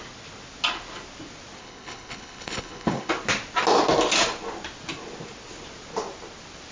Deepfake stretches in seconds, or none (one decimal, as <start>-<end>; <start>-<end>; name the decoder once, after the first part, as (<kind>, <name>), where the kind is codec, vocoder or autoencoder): 1.6-3.1 (codec, HILCodec)

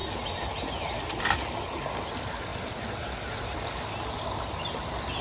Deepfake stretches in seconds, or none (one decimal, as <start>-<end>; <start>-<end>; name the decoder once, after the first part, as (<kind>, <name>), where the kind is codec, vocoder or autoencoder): none

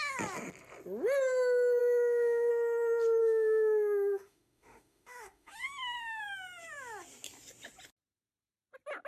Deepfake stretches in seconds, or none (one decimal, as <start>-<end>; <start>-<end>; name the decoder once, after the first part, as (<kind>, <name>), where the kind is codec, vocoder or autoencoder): 1.8-2.5 (autoencoder, DAC-VAE); 3.2-6.2

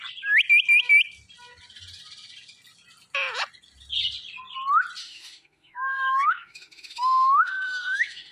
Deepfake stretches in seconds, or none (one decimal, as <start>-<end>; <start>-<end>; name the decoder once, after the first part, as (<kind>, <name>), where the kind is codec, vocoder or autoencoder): 5.0-8.3 (autoencoder, DAC-VAE)

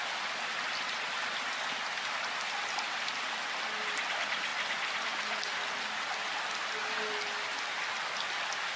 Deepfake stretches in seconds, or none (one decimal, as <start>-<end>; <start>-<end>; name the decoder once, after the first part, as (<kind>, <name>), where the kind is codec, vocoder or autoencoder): none

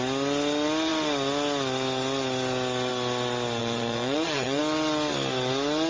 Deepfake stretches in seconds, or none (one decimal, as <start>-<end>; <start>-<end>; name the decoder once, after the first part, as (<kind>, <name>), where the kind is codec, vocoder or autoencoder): 3.6-4.6 (vocoder, Vocos)

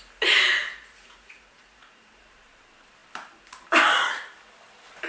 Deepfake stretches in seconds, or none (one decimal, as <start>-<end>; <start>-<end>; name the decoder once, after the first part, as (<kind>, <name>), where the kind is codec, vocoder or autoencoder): 0.6-2.2 (vocoder, Vocos)

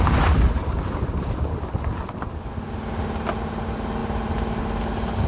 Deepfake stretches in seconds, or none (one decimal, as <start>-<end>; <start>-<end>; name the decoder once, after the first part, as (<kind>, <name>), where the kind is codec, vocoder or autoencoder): none